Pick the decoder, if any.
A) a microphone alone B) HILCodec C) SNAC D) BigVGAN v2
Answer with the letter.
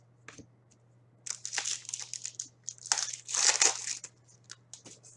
A